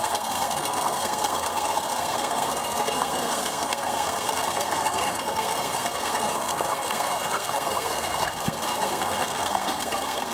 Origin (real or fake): fake